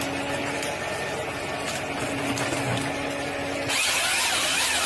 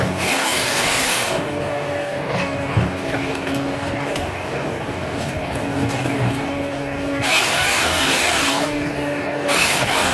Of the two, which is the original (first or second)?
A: first